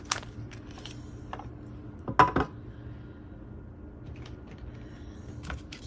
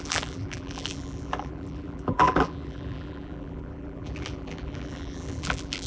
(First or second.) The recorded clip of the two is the first